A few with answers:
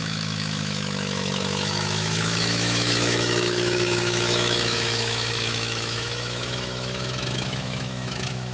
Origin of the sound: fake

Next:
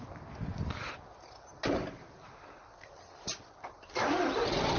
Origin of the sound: real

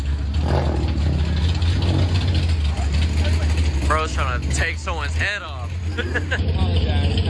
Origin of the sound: real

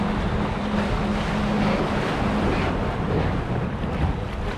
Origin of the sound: real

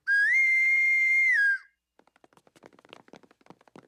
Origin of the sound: real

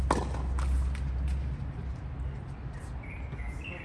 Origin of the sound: real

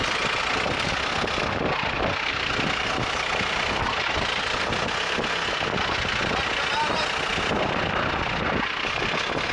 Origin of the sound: real